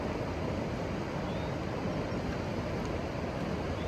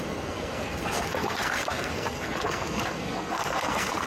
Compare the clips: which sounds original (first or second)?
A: first